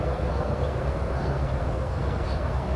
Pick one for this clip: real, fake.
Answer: fake